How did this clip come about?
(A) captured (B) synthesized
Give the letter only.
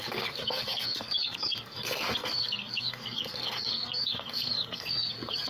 B